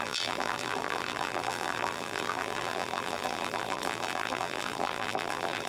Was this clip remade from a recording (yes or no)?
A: yes